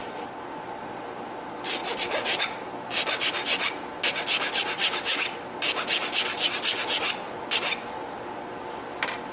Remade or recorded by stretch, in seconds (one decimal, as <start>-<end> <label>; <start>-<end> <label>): 0.0-9.3 recorded